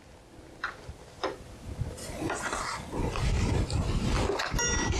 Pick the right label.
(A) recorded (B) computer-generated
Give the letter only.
A